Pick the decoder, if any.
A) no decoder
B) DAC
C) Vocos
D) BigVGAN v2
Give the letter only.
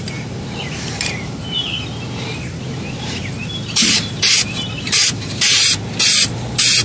D